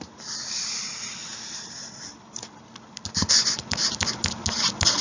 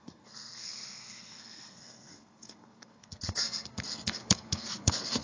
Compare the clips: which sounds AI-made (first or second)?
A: second